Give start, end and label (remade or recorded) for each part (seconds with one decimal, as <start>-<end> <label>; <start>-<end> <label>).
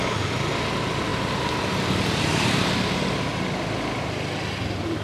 0.0-1.1 recorded; 1.1-2.7 remade; 2.7-5.0 recorded